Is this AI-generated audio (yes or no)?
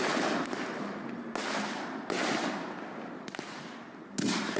no